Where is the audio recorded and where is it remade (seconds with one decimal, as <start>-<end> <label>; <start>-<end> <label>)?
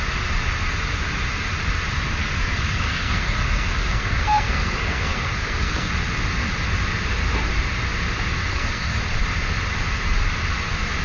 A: 0.0-2.2 recorded; 2.2-5.9 remade; 5.9-8.5 recorded; 8.5-9.0 remade; 9.0-11.0 recorded